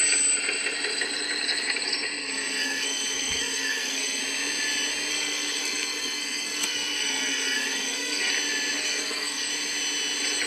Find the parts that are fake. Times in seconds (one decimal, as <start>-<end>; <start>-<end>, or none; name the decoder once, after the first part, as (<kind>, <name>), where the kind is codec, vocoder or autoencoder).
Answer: 2.2-4.2 (codec, SNAC); 5.1-8.3; 8.9-9.5

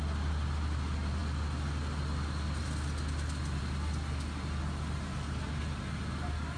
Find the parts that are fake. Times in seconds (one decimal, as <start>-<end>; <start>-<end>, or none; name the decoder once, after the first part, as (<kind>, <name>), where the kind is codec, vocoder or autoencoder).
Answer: none